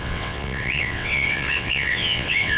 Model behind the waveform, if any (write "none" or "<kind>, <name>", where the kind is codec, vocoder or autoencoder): vocoder, WaveNeXt